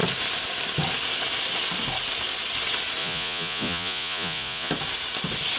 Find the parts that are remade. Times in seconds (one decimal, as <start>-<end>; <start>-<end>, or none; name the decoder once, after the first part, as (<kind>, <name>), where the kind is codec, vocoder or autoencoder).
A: 3.0-4.7 (vocoder, Vocos)